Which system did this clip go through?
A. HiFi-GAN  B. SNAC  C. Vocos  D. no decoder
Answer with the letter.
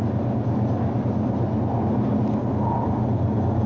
D